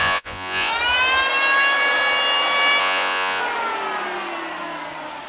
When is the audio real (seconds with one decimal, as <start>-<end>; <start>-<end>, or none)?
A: 0.7-2.8; 3.4-5.3